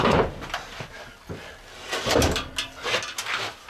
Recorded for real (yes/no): yes